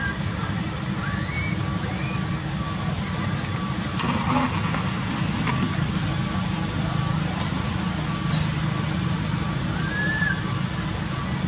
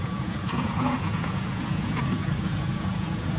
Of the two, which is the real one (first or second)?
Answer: first